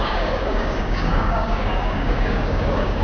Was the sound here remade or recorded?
remade